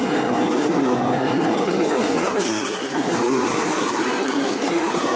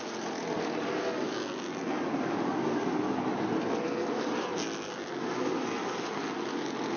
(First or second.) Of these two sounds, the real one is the second